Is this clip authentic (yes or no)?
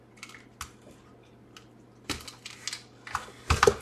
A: yes